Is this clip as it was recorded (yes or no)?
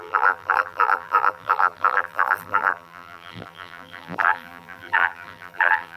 no